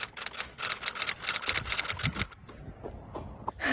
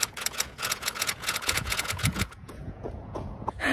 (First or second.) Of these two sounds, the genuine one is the first